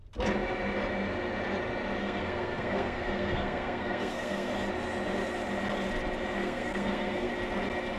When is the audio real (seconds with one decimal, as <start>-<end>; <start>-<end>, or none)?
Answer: 0.0-2.0; 4.5-6.4; 7.3-8.0